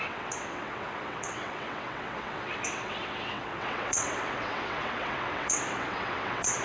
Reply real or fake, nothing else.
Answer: fake